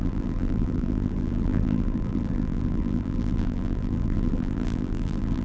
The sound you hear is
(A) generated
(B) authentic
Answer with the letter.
A